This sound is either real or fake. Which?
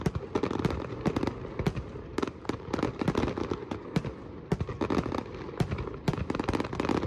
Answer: real